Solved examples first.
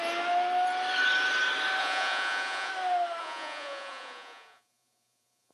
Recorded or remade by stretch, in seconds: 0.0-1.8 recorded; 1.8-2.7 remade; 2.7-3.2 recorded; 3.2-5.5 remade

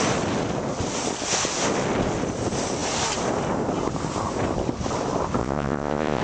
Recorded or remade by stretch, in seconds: 0.0-5.4 recorded; 5.4-6.2 remade

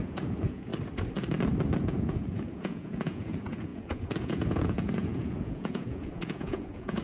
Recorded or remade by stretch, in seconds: 0.0-0.7 remade; 0.7-1.8 recorded; 1.8-7.0 remade

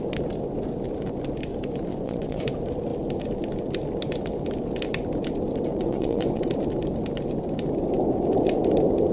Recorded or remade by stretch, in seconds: 0.0-1.9 recorded; 1.9-2.5 remade; 2.5-5.7 recorded; 5.7-6.4 remade; 6.4-9.1 recorded

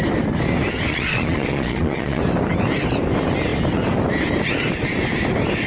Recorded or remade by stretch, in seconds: 0.0-0.9 recorded; 0.9-2.2 remade; 2.2-5.7 recorded

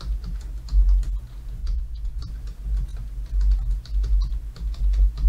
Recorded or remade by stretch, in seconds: 0.0-1.6 recorded; 1.6-2.2 remade; 2.2-5.3 recorded

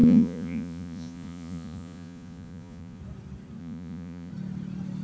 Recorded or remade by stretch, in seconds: 0.0-3.0 remade; 3.0-3.6 recorded; 3.6-4.3 remade; 4.3-5.0 recorded

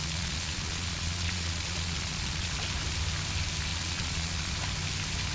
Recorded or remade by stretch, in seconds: 0.0-2.5 remade; 2.5-3.7 recorded; 3.7-4.5 remade; 4.5-5.3 recorded